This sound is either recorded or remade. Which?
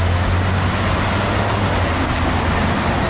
recorded